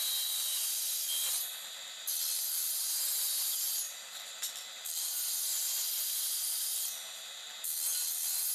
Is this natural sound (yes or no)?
yes